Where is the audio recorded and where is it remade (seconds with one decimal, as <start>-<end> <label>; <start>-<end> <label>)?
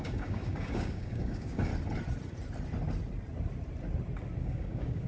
0.0-1.7 remade; 1.7-4.4 recorded; 4.4-5.1 remade